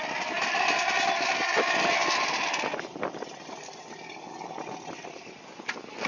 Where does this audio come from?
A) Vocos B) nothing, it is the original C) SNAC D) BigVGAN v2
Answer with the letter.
B